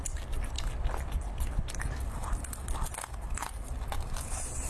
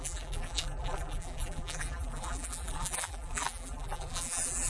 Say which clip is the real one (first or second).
first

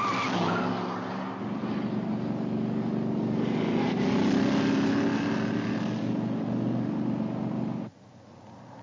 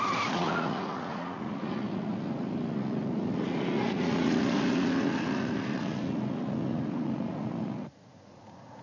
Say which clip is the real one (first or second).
first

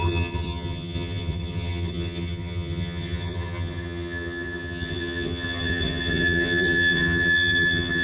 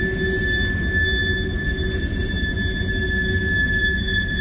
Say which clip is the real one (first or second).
second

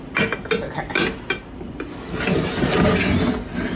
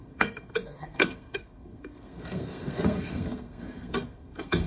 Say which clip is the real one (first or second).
first